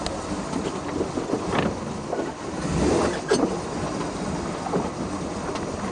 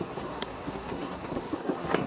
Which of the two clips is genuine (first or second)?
first